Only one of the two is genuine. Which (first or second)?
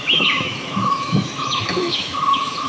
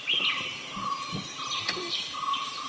second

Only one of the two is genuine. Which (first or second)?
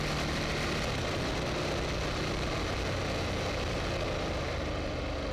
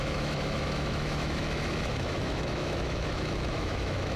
first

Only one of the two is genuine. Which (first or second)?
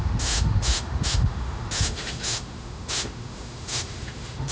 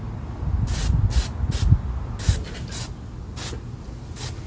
second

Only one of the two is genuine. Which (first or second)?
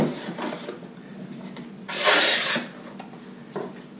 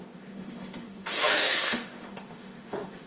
first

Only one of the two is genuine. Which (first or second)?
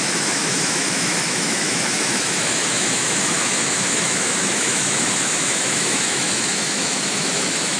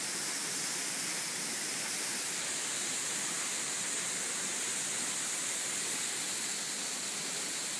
second